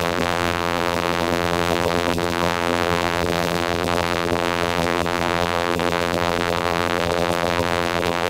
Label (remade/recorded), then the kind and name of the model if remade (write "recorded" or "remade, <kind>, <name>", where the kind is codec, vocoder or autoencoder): remade, vocoder, BigVGAN v2